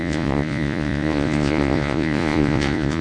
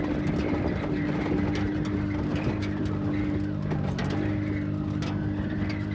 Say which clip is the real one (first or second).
second